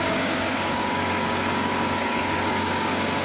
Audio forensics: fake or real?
fake